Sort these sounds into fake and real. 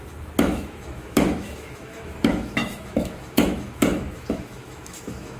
fake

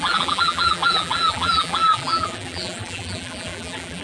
fake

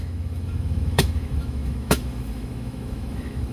fake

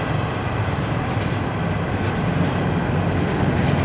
real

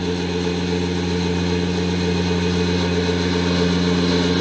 real